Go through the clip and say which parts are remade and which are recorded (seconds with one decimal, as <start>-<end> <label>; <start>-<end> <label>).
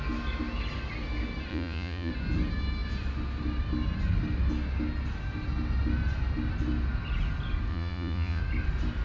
0.0-1.5 recorded; 1.5-2.1 remade; 2.1-7.7 recorded; 7.7-8.4 remade; 8.4-9.0 recorded